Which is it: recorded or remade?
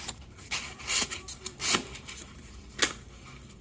recorded